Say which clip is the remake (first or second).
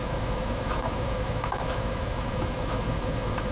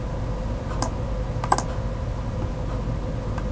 first